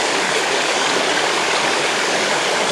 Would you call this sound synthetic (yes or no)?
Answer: yes